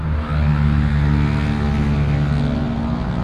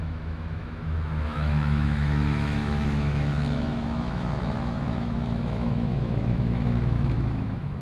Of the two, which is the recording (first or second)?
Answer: first